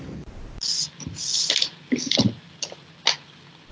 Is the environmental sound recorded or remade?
recorded